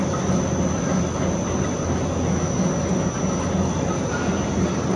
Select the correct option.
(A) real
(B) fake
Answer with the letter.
A